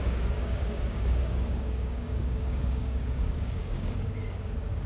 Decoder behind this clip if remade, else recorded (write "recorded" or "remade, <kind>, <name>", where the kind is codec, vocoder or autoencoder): remade, codec, DAC